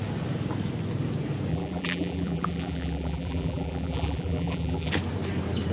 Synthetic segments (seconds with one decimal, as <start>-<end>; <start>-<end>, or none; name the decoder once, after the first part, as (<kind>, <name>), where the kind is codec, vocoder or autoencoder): 1.5-4.9 (vocoder, BigVGAN v2)